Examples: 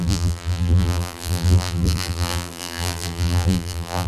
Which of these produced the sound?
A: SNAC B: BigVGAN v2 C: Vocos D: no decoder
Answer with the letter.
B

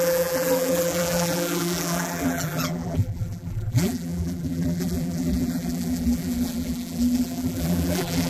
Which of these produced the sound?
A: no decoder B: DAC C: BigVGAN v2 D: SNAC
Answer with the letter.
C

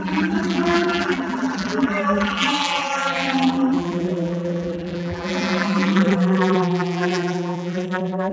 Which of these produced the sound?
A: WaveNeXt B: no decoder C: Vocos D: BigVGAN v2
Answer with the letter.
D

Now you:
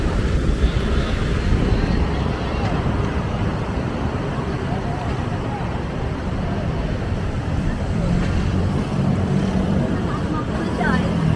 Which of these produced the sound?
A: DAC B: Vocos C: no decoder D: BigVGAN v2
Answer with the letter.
D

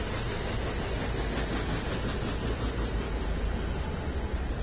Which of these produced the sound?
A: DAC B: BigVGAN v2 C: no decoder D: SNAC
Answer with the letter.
C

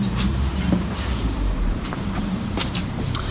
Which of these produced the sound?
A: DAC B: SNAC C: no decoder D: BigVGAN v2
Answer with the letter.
D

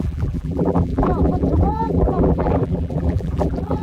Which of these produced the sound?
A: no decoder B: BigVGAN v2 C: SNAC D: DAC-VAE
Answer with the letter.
B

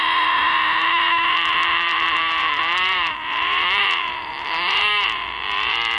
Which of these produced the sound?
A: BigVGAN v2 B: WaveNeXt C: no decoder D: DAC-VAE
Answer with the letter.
A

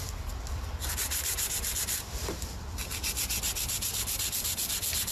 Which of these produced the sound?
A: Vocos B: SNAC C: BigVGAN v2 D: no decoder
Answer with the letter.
C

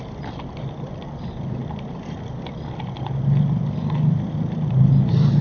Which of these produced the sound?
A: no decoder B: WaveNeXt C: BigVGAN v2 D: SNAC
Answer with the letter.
C